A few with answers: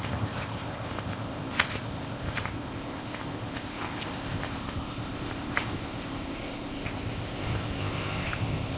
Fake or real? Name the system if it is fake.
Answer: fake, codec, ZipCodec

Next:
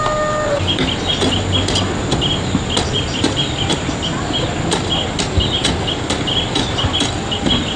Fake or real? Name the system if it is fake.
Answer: real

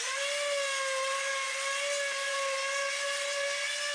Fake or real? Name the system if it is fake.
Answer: real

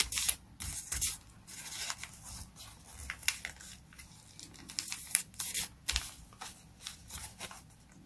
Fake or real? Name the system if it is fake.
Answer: real